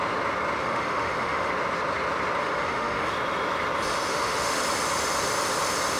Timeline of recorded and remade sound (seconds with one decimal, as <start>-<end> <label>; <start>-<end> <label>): 0.0-0.6 recorded; 0.6-1.5 remade; 1.5-2.4 recorded; 2.4-3.1 remade; 3.1-4.1 recorded; 4.1-4.6 remade; 4.6-6.0 recorded